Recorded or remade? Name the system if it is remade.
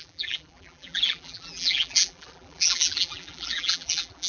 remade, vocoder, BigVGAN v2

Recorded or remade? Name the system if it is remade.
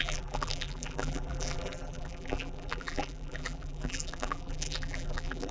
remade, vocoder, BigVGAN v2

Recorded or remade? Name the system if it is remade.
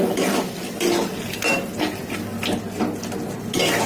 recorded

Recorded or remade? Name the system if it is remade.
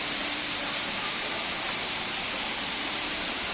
remade, vocoder, BigVGAN v2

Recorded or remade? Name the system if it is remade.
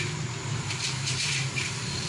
remade, vocoder, BigVGAN v2